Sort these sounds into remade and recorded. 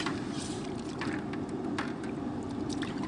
recorded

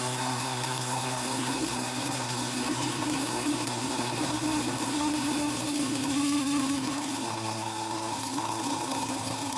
remade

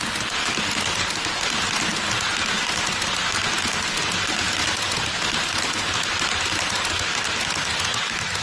recorded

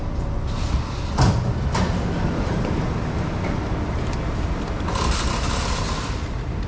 recorded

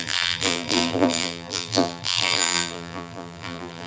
remade